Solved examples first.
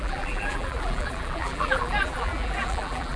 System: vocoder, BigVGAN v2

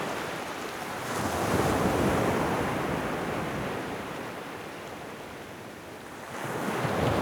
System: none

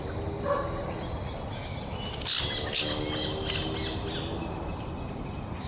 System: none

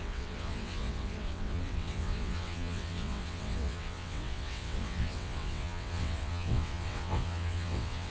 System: vocoder, WaveNeXt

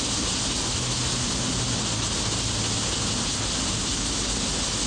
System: none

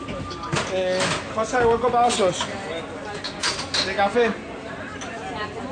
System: none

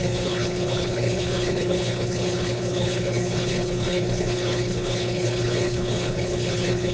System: codec, HILCodec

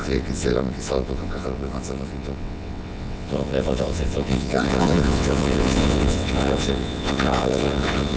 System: vocoder, WaveNeXt